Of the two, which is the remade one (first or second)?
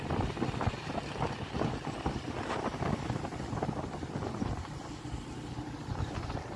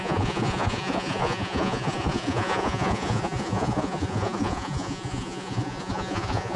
second